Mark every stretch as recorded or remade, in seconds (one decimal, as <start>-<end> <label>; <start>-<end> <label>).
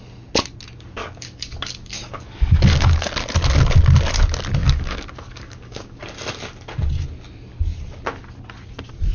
0.0-1.0 recorded; 1.0-3.1 remade; 3.1-4.6 recorded; 4.6-6.0 remade; 6.0-9.1 recorded